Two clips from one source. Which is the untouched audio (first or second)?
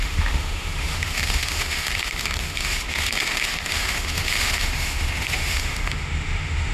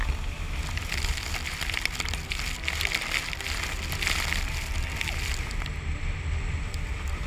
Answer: second